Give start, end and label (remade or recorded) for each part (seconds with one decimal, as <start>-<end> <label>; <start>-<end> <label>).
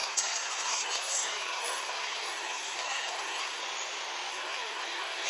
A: 0.0-3.6 remade; 3.6-4.3 recorded; 4.3-5.3 remade